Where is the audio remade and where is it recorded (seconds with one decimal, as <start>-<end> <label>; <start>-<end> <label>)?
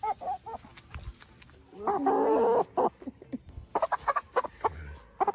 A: 0.0-5.3 recorded